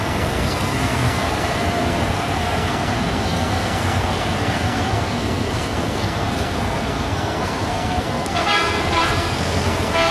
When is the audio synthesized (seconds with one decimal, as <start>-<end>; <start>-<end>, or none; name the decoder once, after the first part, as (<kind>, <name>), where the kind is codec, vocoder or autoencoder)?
0.0-10.1 (codec, SNAC)